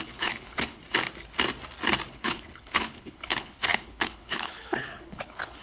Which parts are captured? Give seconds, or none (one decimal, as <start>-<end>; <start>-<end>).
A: 0.8-2.1

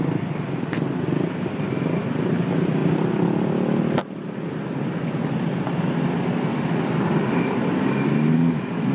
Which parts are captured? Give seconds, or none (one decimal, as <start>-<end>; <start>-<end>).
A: 0.0-8.9

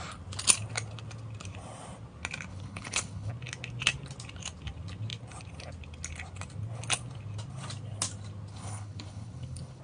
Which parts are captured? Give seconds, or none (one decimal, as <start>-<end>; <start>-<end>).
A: 0.0-2.5; 3.3-8.5

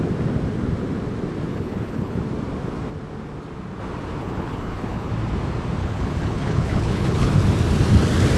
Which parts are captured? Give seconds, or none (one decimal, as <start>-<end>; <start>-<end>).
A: 0.0-1.5; 2.2-4.2; 5.1-5.8; 7.3-8.4

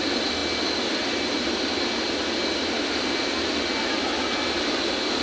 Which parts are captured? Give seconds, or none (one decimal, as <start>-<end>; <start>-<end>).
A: 0.0-5.2

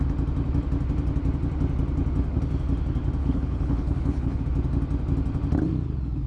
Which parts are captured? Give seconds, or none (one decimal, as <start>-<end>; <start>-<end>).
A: 0.0-3.2; 4.4-6.3